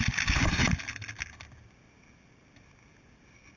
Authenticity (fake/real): real